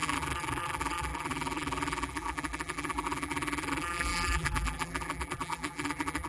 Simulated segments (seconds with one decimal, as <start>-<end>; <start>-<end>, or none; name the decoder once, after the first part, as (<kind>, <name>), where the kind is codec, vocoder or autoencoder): 0.0-6.3 (vocoder, BigVGAN v2)